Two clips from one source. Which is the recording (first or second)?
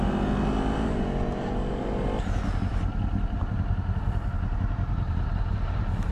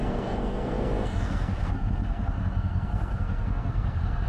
first